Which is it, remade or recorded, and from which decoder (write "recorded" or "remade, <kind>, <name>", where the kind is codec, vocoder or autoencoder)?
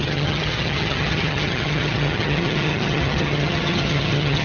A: remade, vocoder, HiFi-GAN